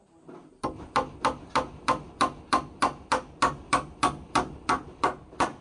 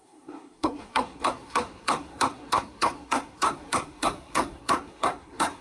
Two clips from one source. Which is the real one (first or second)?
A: first